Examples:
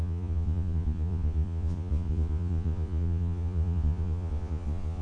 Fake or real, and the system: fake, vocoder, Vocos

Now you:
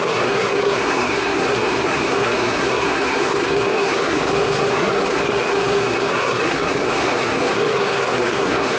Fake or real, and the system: fake, codec, SNAC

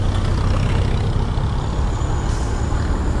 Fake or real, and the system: real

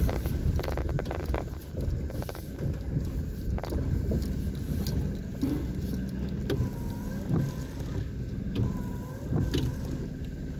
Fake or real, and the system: real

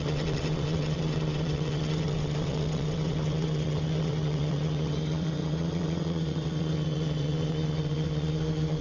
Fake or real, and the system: fake, vocoder, WaveNeXt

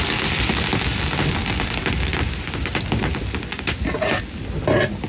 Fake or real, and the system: real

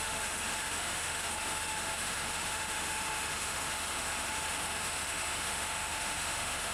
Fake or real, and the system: fake, autoencoder, DAC-VAE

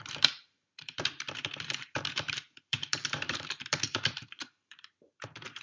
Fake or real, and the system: fake, vocoder, BigVGAN v2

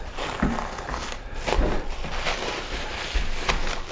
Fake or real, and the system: real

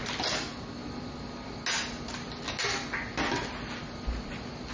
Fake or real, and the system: real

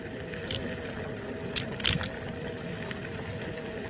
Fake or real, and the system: real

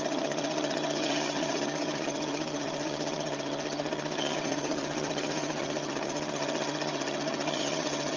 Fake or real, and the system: fake, vocoder, HiFi-GAN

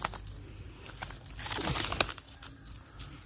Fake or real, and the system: real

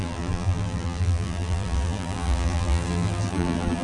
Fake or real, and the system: fake, vocoder, BigVGAN v2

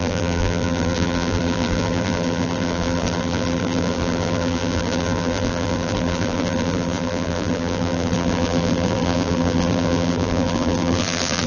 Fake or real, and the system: fake, vocoder, BigVGAN v2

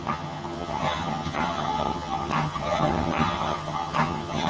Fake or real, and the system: fake, vocoder, HiFi-GAN